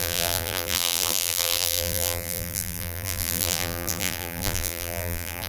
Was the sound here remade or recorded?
remade